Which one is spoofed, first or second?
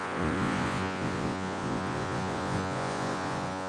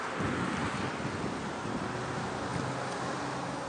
first